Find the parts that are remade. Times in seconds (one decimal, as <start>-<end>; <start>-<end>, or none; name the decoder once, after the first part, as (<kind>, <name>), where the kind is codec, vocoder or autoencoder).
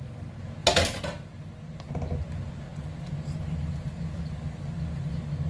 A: none